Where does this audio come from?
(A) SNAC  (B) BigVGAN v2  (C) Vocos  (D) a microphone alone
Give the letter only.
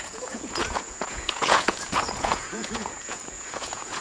C